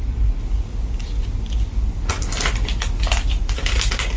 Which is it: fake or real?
real